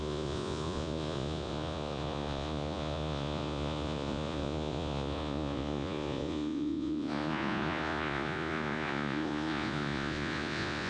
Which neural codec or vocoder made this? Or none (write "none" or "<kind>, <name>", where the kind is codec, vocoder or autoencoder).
vocoder, Vocos